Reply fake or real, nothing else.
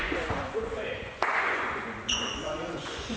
fake